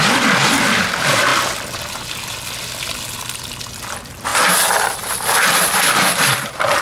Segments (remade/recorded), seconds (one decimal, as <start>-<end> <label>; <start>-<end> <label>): 0.0-4.3 remade; 4.3-5.2 recorded; 5.2-6.8 remade